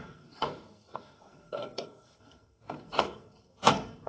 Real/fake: fake